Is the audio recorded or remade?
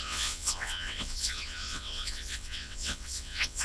remade